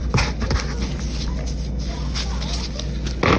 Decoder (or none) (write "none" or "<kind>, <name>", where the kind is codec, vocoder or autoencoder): none